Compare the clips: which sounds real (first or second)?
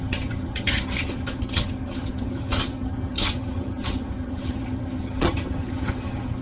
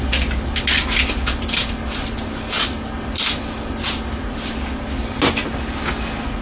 second